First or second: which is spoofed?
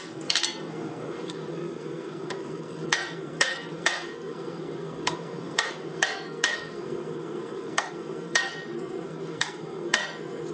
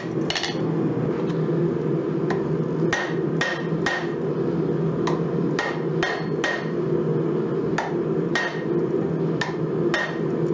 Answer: first